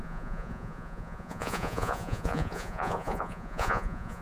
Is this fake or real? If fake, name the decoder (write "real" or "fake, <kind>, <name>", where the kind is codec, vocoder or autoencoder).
fake, vocoder, Vocos